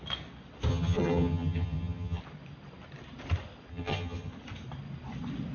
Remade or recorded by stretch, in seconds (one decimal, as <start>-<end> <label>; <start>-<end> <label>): 0.0-0.7 recorded; 0.7-2.2 remade; 2.2-3.7 recorded; 3.7-4.3 remade; 4.3-5.5 recorded